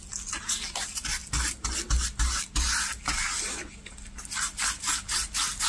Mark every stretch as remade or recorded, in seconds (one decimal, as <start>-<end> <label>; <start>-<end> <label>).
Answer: 0.0-5.7 recorded